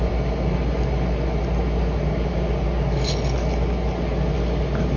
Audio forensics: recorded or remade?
recorded